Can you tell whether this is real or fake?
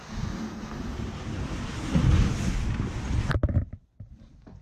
real